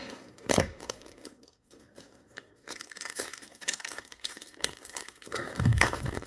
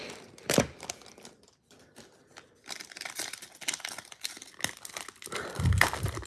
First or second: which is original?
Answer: second